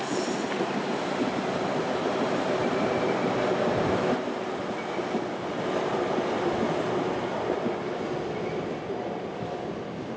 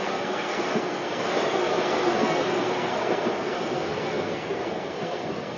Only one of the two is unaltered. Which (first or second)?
first